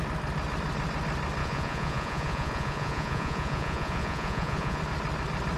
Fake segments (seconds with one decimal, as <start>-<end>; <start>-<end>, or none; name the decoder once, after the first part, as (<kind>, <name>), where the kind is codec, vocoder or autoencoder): 1.4-4.8 (vocoder, Vocos)